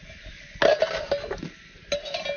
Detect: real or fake real